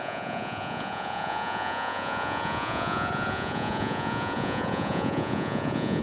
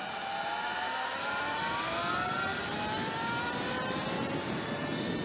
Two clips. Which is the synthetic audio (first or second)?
first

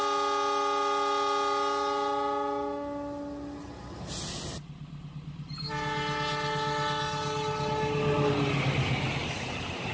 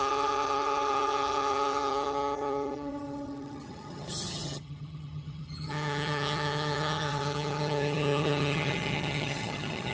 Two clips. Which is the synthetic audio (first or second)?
second